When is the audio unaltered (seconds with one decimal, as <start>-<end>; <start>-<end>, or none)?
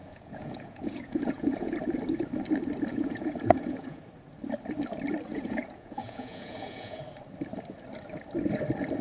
1.8-2.9; 4.0-5.3; 7.0-9.0